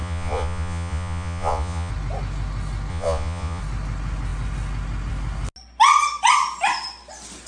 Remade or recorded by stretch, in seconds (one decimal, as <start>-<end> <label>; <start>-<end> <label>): 0.0-1.9 remade; 1.9-2.9 recorded; 2.9-3.6 remade; 3.6-7.5 recorded